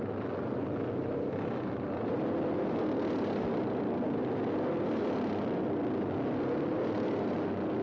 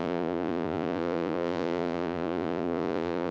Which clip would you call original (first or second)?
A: first